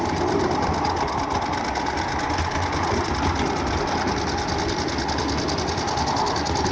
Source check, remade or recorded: recorded